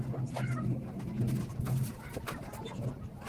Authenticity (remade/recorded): recorded